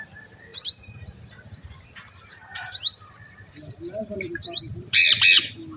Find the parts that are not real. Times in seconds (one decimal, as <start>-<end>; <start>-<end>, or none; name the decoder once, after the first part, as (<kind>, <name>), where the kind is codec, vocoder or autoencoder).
0.0-5.0 (vocoder, BigVGAN v2)

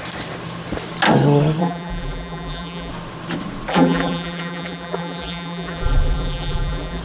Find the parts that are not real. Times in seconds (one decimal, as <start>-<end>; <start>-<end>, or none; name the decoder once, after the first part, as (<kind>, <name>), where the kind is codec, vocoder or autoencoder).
1.6-2.9 (vocoder, BigVGAN v2); 3.7-7.0

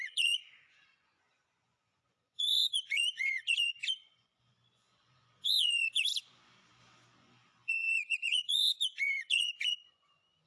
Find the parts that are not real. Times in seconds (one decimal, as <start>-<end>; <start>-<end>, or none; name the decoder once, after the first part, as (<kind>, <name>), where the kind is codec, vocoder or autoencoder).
0.0-10.5 (vocoder, Vocos)

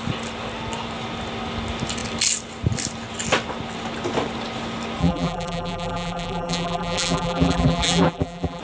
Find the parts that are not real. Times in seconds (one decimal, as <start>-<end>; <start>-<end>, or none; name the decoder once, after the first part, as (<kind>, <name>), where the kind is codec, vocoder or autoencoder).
5.0-8.6 (vocoder, BigVGAN v2)

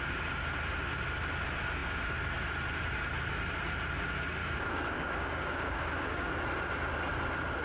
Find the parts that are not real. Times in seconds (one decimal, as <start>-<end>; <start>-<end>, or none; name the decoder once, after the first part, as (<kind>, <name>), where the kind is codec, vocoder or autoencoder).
4.4-6.3 (codec, DAC)

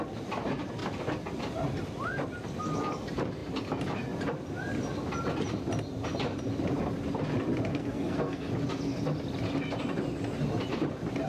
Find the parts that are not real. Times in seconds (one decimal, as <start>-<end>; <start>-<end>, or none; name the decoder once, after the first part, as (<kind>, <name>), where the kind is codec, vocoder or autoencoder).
7.7-8.5 (codec, SNAC)